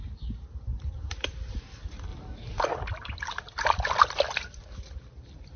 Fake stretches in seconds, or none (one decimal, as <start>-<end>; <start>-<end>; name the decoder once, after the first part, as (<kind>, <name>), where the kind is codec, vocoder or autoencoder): none

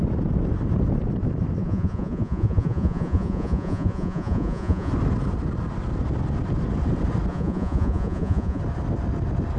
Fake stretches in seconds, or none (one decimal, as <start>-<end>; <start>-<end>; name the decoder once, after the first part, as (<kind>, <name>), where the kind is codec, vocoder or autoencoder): 1.6-4.9 (vocoder, Vocos); 7.3-8.6

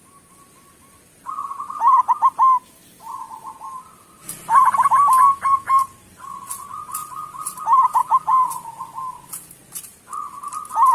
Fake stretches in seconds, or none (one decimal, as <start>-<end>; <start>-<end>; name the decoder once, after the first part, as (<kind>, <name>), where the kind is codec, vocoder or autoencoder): 8.0-8.5 (vocoder, BigVGAN v2)

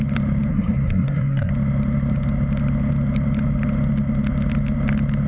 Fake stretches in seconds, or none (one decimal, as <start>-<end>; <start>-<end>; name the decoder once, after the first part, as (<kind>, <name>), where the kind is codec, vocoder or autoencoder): 0.5-1.5 (codec, SNAC)

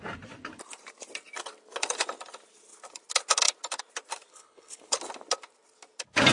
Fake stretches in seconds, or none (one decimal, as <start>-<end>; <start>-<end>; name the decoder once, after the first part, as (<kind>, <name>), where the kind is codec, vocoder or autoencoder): 4.3-5.0 (codec, HILCodec)

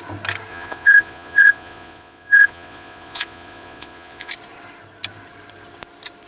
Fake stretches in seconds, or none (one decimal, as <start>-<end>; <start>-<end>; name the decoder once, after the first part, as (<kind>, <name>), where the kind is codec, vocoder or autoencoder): 0.5-4.3 (vocoder, Vocos)